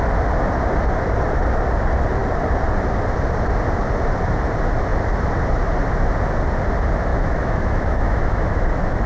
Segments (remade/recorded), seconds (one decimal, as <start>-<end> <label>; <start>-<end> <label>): 0.0-7.1 recorded; 7.1-8.7 remade; 8.7-9.1 recorded